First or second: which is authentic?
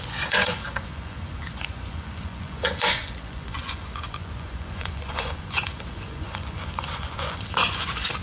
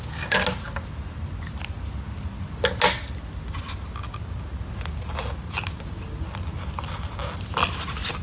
second